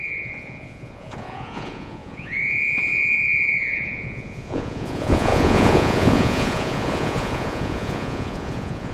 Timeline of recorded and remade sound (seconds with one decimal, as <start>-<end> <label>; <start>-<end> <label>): 0.0-8.9 remade